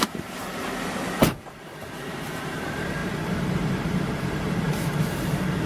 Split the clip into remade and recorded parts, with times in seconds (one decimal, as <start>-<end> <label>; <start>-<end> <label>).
0.0-0.4 remade; 0.4-1.2 recorded; 1.2-5.7 remade